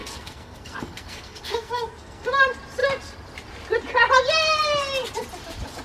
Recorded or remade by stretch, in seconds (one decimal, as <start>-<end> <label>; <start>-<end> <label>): 0.0-2.3 remade; 2.3-5.8 recorded